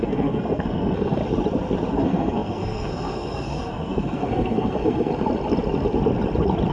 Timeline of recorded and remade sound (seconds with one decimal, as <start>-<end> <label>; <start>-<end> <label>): 0.0-1.2 remade; 1.2-2.0 recorded; 2.0-5.1 remade; 5.1-6.7 recorded